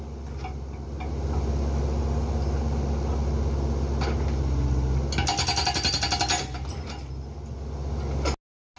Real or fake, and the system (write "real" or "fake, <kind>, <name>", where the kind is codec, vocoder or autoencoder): real